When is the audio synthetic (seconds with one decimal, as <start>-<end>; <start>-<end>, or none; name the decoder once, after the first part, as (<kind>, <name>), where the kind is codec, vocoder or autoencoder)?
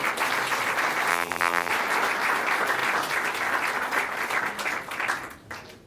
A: 1.1-1.7 (vocoder, BigVGAN v2)